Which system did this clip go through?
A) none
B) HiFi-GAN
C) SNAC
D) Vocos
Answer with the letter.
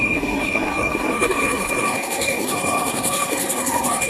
C